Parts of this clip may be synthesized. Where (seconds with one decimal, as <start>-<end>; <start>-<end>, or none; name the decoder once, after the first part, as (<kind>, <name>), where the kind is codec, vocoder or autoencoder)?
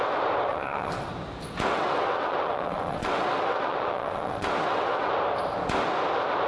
0.5-1.1 (vocoder, WaveNeXt); 1.7-5.1